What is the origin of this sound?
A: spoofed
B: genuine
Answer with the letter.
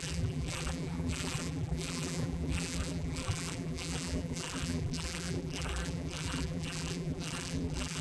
A